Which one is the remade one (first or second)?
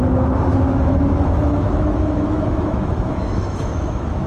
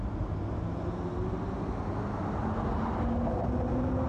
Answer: first